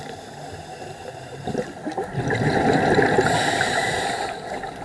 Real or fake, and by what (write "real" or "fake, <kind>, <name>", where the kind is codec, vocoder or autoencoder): real